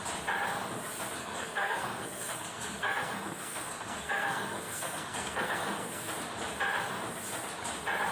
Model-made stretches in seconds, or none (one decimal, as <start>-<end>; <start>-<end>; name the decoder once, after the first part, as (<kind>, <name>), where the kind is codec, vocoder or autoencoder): 1.2-6.1 (codec, SNAC)